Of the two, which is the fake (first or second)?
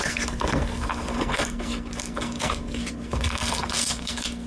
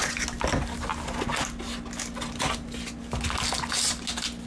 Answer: first